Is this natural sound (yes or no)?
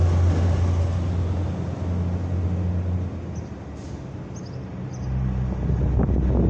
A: yes